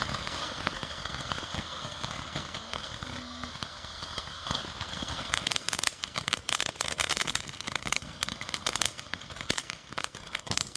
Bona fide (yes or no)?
no